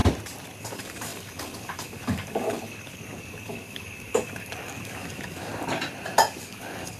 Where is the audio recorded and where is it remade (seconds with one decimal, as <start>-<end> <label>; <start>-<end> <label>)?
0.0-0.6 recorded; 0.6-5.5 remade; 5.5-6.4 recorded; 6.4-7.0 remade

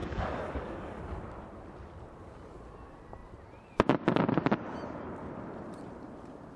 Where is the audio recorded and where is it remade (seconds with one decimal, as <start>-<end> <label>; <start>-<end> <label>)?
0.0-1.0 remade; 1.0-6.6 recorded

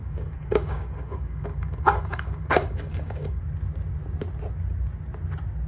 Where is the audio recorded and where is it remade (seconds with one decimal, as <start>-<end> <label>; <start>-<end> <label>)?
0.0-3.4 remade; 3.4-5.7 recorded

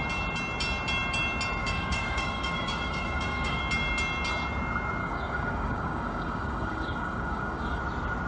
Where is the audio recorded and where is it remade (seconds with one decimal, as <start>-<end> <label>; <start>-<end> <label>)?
0.0-1.6 recorded; 1.6-3.6 remade; 3.6-5.0 recorded; 5.0-7.8 remade; 7.8-8.3 recorded

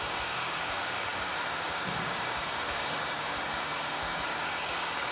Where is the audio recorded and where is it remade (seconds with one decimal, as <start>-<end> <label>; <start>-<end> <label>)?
0.0-5.1 remade